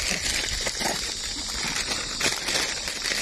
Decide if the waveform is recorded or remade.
recorded